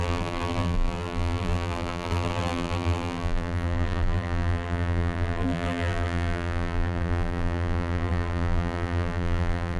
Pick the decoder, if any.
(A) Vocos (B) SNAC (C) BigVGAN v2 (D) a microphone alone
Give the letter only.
C